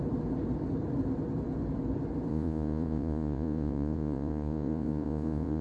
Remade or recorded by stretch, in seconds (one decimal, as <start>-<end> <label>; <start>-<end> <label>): 0.0-2.3 recorded; 2.3-5.6 remade